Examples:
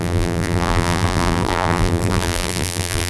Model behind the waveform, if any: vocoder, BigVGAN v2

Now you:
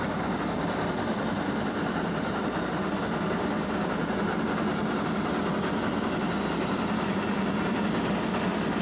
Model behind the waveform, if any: none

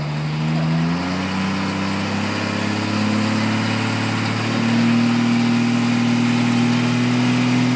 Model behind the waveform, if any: none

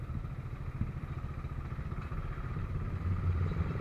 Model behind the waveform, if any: none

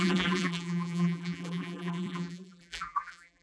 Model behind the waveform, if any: vocoder, BigVGAN v2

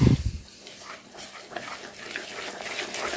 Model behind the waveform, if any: none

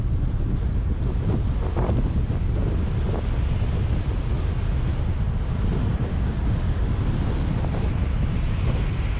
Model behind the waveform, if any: none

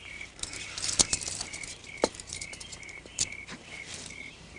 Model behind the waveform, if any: vocoder, BigVGAN v2